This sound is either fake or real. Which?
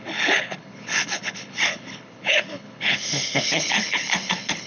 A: fake